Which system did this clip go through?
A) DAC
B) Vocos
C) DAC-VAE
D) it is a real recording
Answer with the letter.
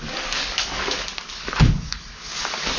A